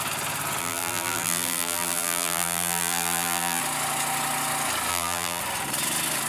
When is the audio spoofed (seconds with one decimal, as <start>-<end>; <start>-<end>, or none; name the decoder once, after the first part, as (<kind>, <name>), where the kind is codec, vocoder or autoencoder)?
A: 0.6-3.6 (vocoder, BigVGAN v2); 4.9-5.4